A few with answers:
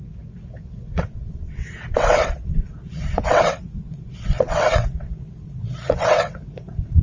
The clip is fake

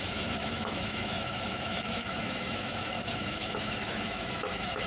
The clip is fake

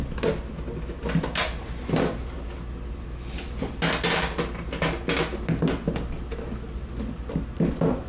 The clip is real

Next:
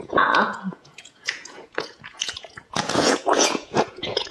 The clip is fake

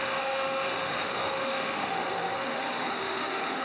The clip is fake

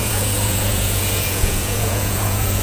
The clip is fake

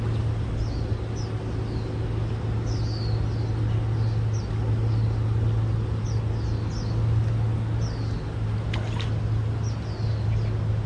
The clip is real